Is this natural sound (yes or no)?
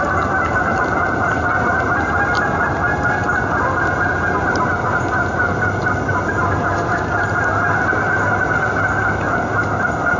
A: yes